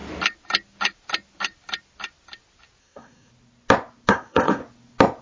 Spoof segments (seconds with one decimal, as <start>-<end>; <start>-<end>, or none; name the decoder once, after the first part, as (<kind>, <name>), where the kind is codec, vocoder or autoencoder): 2.8-3.3 (codec, SNAC); 4.1-4.6